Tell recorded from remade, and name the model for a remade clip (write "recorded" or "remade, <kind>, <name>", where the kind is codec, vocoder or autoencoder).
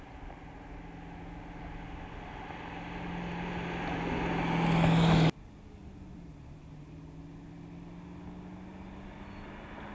recorded